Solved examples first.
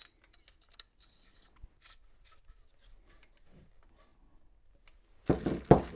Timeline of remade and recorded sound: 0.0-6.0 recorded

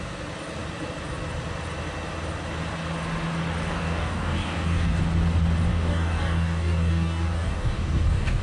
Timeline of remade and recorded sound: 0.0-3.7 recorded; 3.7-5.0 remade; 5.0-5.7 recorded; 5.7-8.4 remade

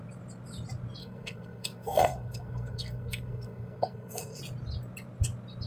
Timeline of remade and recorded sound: 0.0-1.0 recorded; 1.0-4.4 remade; 4.4-5.7 recorded